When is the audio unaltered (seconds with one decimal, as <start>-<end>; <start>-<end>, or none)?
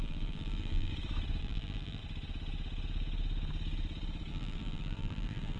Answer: 0.9-1.4; 2.0-4.3